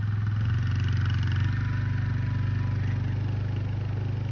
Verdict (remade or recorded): recorded